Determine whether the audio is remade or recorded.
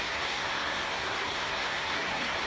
remade